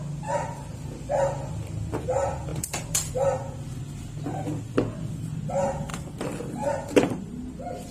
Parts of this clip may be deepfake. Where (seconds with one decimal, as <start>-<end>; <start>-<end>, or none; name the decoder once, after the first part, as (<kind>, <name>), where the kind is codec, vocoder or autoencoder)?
2.5-3.2 (vocoder, BigVGAN v2); 5.9-7.5